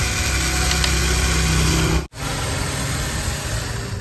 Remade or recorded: recorded